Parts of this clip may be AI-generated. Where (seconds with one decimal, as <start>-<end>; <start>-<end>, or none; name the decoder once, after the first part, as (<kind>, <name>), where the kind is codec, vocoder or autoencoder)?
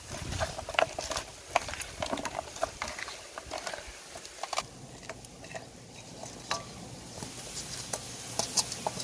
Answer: none